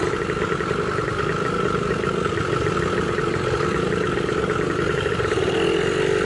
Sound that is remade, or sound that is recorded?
remade